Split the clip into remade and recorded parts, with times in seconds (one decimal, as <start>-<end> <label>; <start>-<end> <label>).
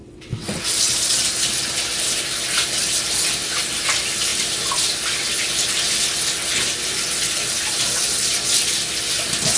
0.0-0.6 remade; 0.6-9.6 recorded